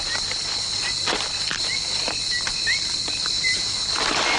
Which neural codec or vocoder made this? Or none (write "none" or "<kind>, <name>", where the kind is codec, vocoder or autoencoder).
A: none